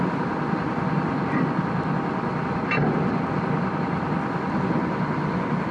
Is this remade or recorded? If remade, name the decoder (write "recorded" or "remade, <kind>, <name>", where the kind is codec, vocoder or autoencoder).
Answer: recorded